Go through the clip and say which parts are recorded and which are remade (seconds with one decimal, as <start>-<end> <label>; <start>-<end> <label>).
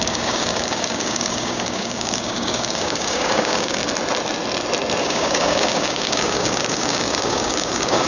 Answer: 0.0-3.8 remade; 3.8-5.0 recorded; 5.0-8.1 remade